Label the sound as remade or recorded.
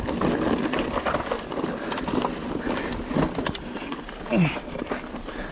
recorded